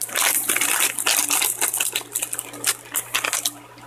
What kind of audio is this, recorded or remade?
recorded